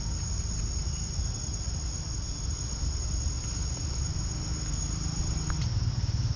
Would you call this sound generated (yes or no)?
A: no